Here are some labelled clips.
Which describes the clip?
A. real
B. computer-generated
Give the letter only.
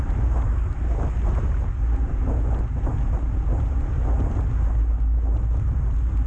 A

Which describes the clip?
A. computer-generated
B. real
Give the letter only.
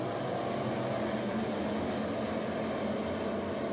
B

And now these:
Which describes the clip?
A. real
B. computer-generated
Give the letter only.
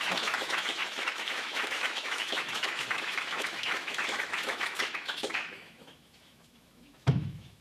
B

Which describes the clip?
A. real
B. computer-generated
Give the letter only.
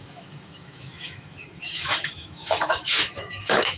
B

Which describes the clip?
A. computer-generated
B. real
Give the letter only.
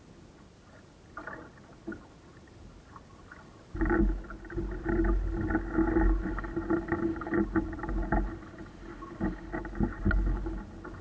B